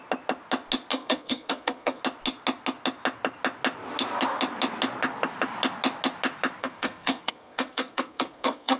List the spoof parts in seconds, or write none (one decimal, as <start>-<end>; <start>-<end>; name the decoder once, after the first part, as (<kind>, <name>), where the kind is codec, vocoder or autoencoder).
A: 0.9-2.0 (codec, SNAC); 6.6-8.8